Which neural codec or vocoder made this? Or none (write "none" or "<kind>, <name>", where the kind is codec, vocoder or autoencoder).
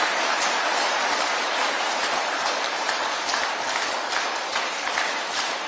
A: vocoder, BigVGAN v2